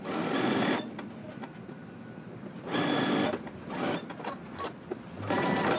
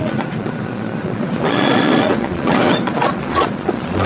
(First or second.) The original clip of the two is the first